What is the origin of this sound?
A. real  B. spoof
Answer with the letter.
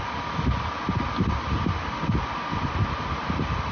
A